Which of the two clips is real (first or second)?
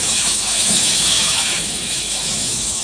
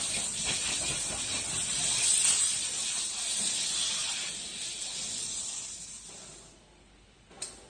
second